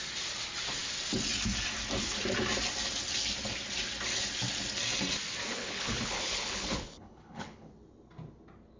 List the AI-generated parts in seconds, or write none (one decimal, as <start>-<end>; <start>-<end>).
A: 5.5-7.7